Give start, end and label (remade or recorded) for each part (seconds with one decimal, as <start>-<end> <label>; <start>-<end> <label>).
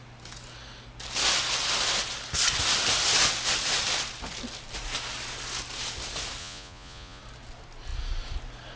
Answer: 0.0-6.4 recorded; 6.4-7.2 remade; 7.2-8.8 recorded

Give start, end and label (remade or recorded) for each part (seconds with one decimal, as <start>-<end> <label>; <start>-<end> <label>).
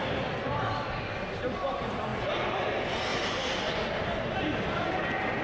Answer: 0.0-3.1 recorded; 3.1-3.7 remade; 3.7-5.4 recorded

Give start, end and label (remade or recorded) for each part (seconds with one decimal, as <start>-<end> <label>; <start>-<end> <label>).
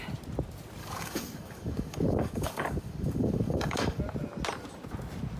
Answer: 0.0-0.8 recorded; 0.8-4.0 remade; 4.0-5.4 recorded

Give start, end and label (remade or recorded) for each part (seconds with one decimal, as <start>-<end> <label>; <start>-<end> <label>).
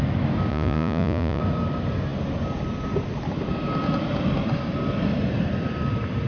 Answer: 0.0-0.5 recorded; 0.5-1.4 remade; 1.4-6.3 recorded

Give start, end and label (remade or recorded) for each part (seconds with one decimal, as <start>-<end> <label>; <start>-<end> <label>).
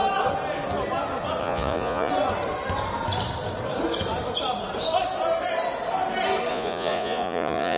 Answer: 0.0-1.4 recorded; 1.4-2.1 remade; 2.1-6.5 recorded; 6.5-7.8 remade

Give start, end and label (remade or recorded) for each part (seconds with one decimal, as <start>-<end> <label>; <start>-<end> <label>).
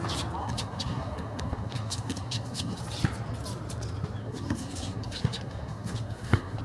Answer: 0.0-0.4 recorded; 0.4-2.8 remade; 2.8-4.2 recorded; 4.2-6.6 remade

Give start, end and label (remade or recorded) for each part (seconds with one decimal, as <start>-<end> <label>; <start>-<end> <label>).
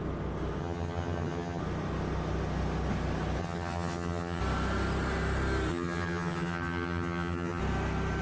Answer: 0.0-0.6 recorded; 0.6-1.6 remade; 1.6-3.4 recorded; 3.4-4.4 remade; 4.4-5.7 recorded; 5.7-7.6 remade; 7.6-8.2 recorded